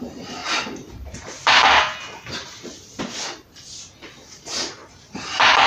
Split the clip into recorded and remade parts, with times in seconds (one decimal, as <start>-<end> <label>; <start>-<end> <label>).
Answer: 0.0-0.4 recorded; 0.4-3.0 remade; 3.0-4.8 recorded; 4.8-5.7 remade